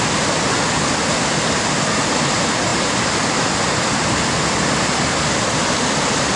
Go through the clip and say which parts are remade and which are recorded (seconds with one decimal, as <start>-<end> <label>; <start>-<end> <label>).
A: 0.0-6.4 recorded